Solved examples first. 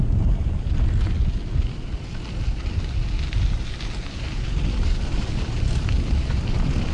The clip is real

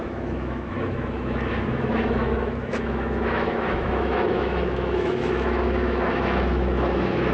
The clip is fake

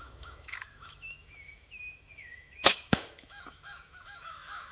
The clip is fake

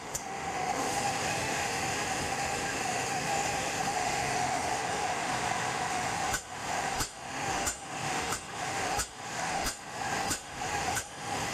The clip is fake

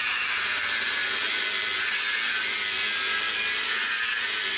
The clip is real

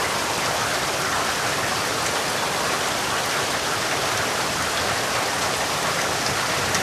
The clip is real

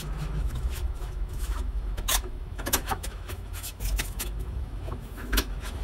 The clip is fake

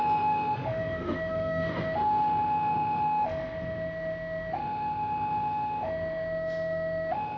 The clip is fake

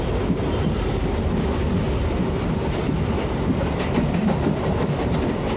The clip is real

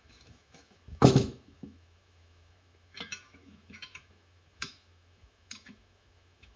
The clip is fake